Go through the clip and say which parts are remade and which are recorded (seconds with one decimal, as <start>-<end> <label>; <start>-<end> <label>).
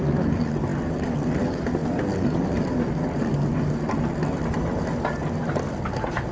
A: 0.0-6.3 recorded